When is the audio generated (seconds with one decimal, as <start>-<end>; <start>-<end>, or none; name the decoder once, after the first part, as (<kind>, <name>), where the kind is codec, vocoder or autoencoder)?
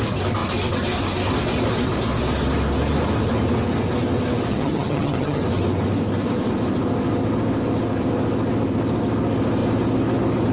4.5-5.4 (vocoder, HiFi-GAN)